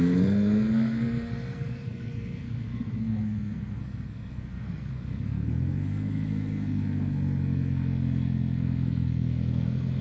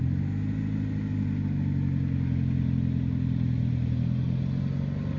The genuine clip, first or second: second